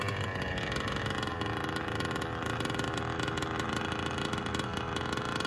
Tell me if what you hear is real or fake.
real